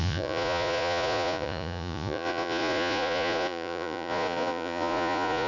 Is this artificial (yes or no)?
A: yes